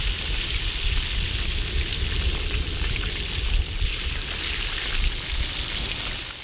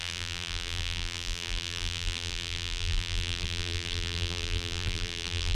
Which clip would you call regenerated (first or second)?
second